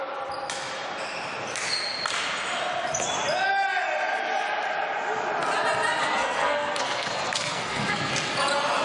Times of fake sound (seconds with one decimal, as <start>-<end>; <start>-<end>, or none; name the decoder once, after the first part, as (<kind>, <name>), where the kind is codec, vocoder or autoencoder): 6.0-8.1 (codec, SNAC)